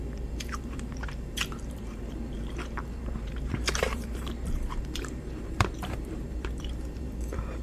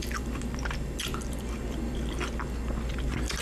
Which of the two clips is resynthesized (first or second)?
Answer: first